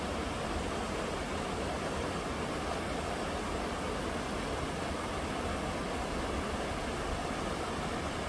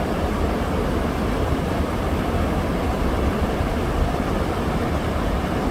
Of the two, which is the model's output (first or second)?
second